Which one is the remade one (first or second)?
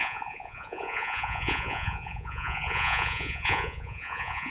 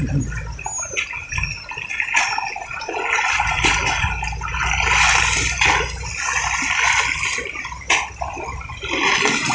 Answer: first